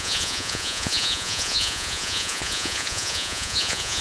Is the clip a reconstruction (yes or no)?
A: yes